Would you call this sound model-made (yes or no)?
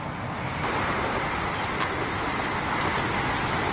no